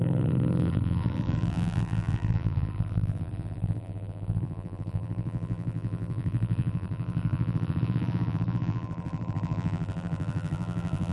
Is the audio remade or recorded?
remade